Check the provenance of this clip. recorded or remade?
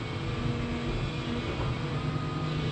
recorded